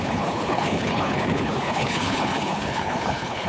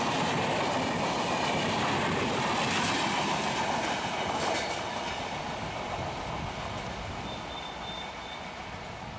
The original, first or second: second